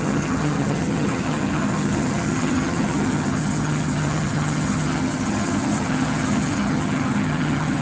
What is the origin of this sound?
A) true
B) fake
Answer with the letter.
B